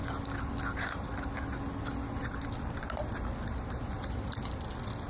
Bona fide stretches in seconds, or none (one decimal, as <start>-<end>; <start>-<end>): 0.0-5.1